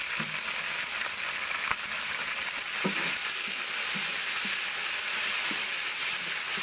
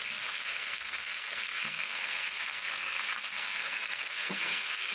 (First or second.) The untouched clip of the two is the first